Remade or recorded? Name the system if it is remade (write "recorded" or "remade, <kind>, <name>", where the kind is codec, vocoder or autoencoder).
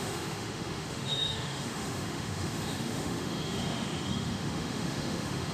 remade, autoencoder, DAC-VAE